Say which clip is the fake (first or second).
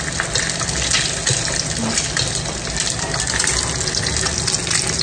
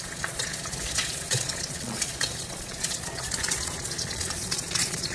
second